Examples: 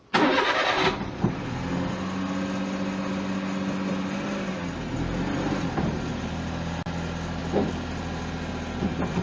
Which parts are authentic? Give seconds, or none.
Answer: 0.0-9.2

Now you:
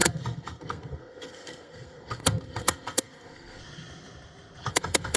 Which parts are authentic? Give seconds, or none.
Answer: 3.6-4.7

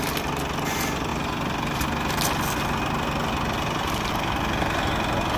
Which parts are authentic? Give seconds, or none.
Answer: 0.0-5.4